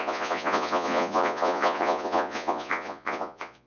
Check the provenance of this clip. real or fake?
fake